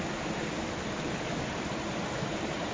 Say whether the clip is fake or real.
real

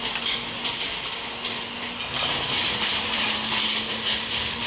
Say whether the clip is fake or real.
real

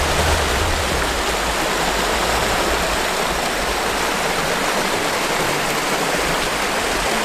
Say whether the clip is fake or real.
real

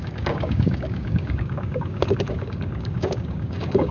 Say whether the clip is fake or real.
fake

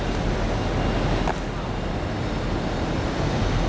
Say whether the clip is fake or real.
real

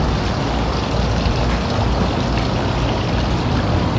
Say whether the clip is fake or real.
real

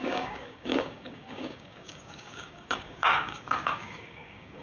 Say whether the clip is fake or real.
fake